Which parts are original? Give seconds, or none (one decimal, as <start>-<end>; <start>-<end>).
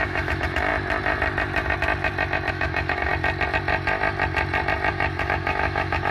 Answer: 0.7-2.5; 3.1-4.9